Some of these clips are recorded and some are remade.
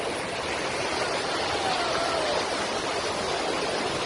recorded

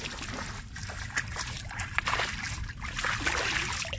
recorded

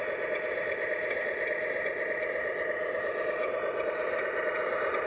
recorded